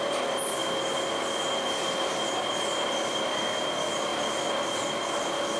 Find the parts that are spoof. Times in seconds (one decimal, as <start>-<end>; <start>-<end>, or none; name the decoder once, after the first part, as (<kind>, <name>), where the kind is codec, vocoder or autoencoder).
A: 4.1-4.9 (vocoder, BigVGAN v2)